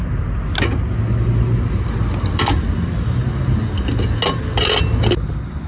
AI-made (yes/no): no